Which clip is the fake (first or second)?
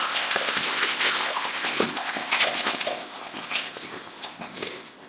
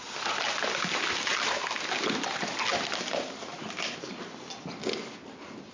first